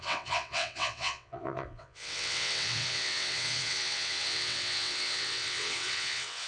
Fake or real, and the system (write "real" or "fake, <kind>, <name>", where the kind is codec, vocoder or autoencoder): fake, vocoder, WaveNeXt